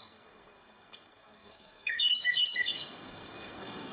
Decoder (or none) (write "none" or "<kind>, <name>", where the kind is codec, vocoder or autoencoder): codec, SNAC